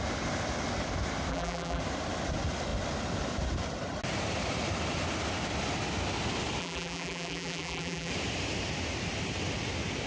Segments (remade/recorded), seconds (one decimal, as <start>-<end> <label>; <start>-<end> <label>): 0.0-1.3 recorded; 1.3-1.8 remade; 1.8-6.6 recorded; 6.6-8.1 remade; 8.1-10.1 recorded